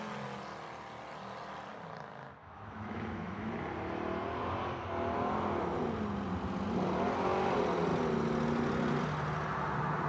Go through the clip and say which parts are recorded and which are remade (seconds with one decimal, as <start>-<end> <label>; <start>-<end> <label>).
0.0-2.4 recorded; 2.4-3.5 remade; 3.5-10.1 recorded